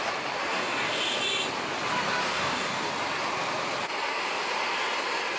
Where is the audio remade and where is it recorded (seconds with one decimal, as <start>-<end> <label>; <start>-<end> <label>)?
0.0-0.5 recorded; 0.5-1.2 remade; 1.2-2.3 recorded; 2.3-2.9 remade; 2.9-5.4 recorded